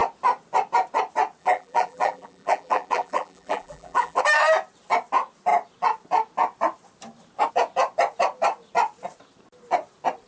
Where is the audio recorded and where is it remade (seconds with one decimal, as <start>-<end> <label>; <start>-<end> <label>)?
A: 0.0-1.4 recorded; 1.4-4.2 remade; 4.2-10.3 recorded